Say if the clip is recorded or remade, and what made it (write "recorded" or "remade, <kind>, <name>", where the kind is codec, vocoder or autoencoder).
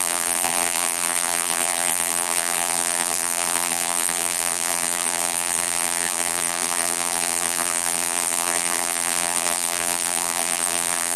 remade, vocoder, BigVGAN v2